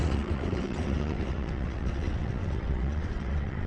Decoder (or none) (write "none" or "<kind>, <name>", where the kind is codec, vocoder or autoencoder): vocoder, WaveNeXt